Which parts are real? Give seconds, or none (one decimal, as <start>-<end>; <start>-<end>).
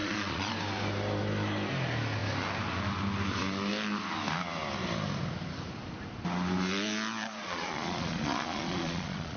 0.5-7.4